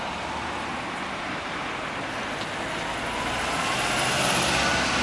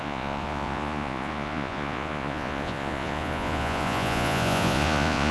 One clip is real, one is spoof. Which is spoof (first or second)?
second